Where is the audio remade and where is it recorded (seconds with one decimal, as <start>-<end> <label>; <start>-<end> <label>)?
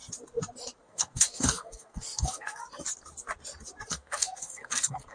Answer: 0.0-0.8 recorded; 0.8-2.6 remade; 2.6-3.9 recorded; 3.9-5.1 remade